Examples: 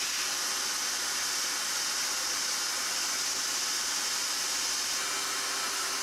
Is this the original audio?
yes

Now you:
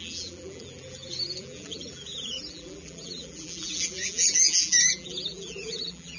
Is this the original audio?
no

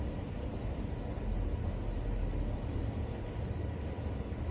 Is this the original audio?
yes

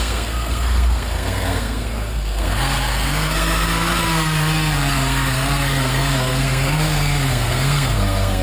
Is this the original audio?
no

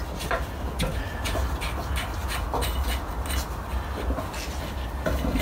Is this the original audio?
yes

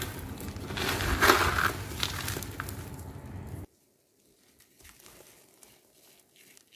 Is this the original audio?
yes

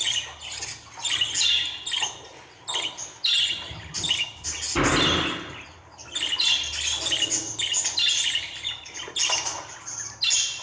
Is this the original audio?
yes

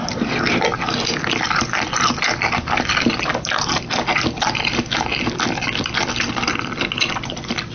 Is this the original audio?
yes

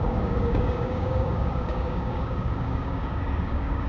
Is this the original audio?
no